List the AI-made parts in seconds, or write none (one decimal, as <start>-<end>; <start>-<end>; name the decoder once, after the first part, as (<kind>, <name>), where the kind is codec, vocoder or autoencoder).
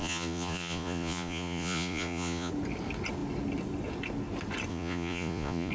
0.0-2.5 (vocoder, Vocos); 4.7-5.7